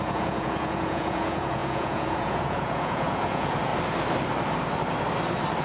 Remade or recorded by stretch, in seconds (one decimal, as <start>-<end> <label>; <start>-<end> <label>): 0.0-3.7 remade; 3.7-5.6 recorded